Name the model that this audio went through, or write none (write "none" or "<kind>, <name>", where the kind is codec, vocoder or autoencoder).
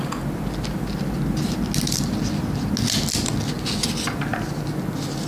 none